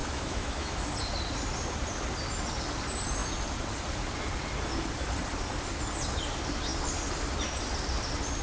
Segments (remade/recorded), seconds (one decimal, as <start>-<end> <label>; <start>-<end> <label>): 0.0-0.9 remade; 0.9-8.4 recorded